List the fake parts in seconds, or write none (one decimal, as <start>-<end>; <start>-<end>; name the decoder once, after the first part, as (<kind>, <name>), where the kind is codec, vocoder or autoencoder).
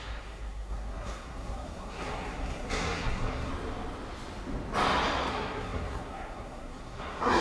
0.0-3.5 (codec, SNAC); 5.3-7.4